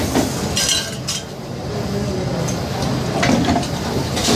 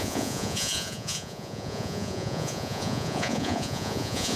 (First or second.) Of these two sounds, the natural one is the first